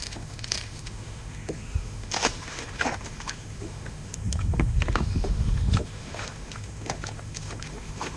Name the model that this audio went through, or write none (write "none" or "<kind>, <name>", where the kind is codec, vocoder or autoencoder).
autoencoder, DAC-VAE